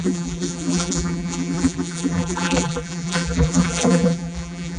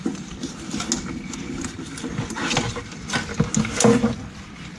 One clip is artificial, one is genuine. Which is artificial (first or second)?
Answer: first